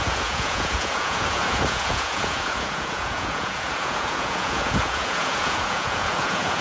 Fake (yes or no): yes